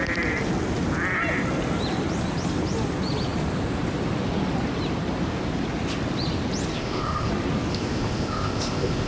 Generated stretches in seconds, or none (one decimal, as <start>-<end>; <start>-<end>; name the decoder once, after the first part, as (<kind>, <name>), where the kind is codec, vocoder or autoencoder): 6.7-7.3 (codec, ZipCodec); 7.7-9.1

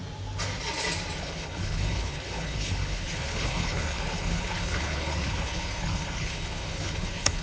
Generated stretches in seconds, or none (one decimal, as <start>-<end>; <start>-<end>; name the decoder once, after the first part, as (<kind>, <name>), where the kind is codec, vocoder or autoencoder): 1.2-7.4 (codec, HILCodec)